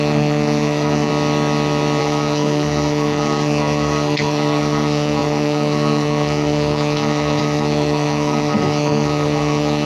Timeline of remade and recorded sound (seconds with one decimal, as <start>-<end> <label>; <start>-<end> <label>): 0.0-1.1 remade; 1.1-2.0 recorded; 2.0-9.9 remade